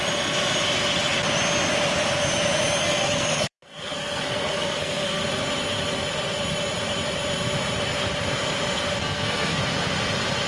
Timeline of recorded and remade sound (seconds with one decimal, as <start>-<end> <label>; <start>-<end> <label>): 0.0-2.8 recorded; 2.8-5.2 remade; 5.2-9.0 recorded; 9.0-9.6 remade; 9.6-10.5 recorded

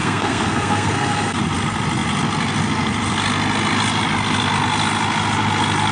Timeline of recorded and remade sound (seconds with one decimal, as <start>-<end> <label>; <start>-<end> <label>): 0.0-1.4 remade; 1.4-5.9 recorded

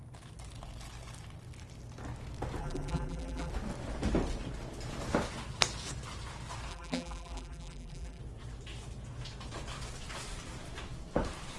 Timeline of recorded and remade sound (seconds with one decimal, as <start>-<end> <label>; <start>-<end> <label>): 0.0-2.6 recorded; 2.6-3.5 remade; 3.5-6.7 recorded; 6.7-8.2 remade; 8.2-11.6 recorded

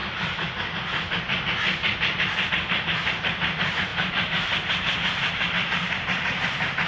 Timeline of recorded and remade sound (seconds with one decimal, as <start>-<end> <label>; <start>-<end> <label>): 0.0-2.5 recorded; 2.5-6.9 remade

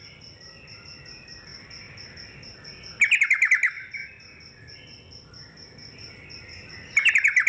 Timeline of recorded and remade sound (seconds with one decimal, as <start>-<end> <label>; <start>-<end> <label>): 0.0-7.5 recorded